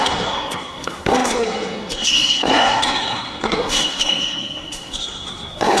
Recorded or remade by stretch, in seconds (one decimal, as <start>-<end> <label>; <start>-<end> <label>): 0.0-5.8 remade